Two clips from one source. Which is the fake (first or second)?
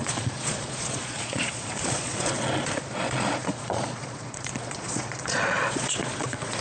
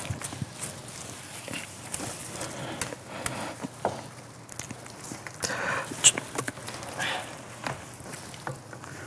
first